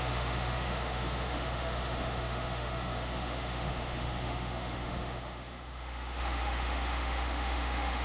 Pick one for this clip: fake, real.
fake